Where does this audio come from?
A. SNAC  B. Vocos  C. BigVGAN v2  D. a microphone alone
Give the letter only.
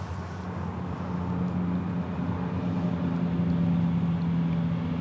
D